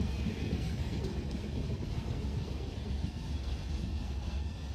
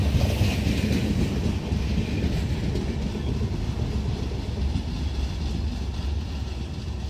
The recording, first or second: second